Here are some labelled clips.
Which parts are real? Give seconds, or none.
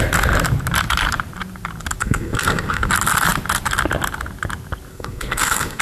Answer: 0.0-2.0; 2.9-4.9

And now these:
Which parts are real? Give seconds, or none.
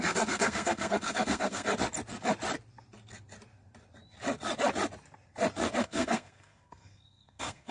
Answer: 1.7-5.8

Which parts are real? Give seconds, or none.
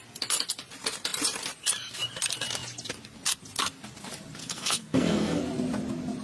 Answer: 0.0-4.4; 5.4-6.2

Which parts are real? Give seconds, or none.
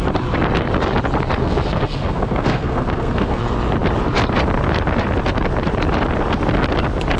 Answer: 0.0-1.4; 3.4-7.2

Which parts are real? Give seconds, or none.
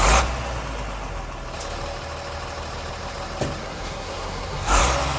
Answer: 0.0-3.6; 4.8-5.2